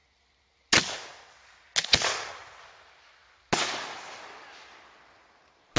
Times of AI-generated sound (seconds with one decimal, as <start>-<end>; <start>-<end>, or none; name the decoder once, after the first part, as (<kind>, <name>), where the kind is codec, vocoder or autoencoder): none